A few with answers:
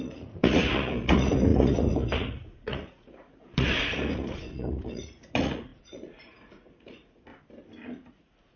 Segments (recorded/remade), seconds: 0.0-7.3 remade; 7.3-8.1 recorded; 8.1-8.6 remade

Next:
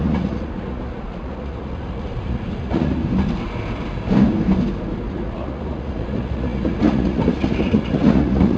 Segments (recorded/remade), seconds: 0.0-3.0 remade; 3.0-5.1 recorded; 5.1-8.6 remade

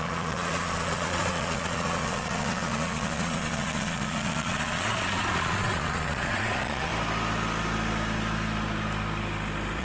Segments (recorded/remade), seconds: 0.0-6.9 remade; 6.9-9.8 recorded

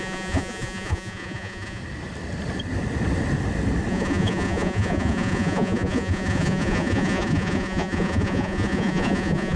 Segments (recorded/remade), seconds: 0.0-1.8 remade; 1.8-3.9 recorded; 3.9-9.6 remade

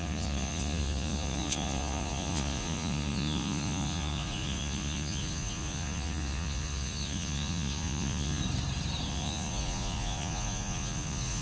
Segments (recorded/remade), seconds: 0.0-8.4 remade; 8.4-9.1 recorded; 9.1-11.4 remade

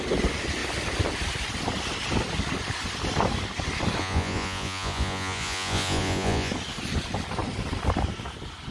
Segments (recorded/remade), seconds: 0.0-4.0 recorded; 4.0-6.5 remade; 6.5-8.7 recorded